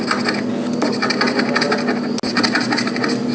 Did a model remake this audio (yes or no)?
no